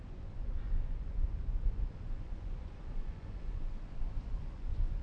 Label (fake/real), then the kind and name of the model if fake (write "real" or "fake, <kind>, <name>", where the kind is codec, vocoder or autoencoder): fake, vocoder, Vocos